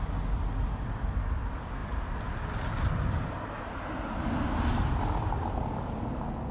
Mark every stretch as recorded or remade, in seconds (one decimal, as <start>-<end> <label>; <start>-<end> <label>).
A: 0.0-6.5 recorded